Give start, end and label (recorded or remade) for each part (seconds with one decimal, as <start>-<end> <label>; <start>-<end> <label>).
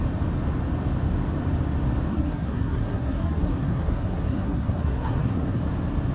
0.0-2.1 recorded; 2.1-5.6 remade; 5.6-6.1 recorded